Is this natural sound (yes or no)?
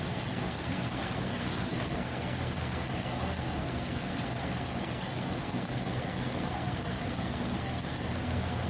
no